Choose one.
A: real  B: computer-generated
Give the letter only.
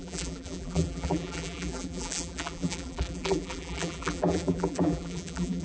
B